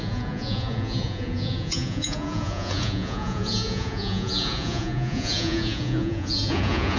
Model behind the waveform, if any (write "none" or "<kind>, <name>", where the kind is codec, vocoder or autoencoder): vocoder, Vocos